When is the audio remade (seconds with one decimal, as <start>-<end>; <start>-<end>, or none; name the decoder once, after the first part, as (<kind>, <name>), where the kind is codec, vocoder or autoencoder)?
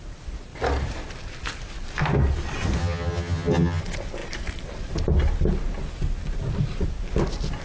2.8-3.8 (vocoder, HiFi-GAN)